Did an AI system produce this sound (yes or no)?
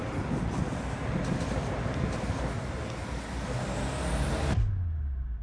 no